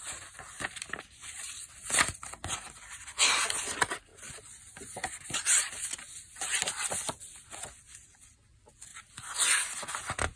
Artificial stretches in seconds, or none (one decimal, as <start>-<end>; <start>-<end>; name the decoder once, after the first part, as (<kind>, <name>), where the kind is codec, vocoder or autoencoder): none